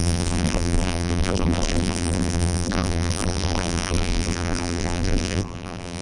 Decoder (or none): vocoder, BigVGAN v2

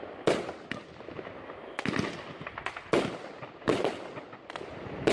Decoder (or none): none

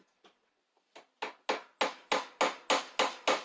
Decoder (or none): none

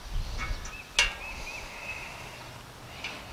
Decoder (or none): none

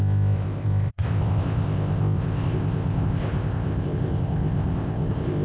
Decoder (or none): codec, ZipCodec